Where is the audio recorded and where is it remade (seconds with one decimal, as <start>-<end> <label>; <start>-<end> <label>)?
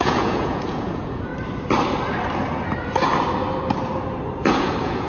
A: 0.0-1.3 remade; 1.3-4.4 recorded; 4.4-5.1 remade